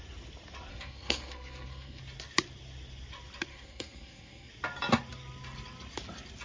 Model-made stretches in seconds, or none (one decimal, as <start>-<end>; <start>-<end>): 0.7-2.0; 3.5-4.5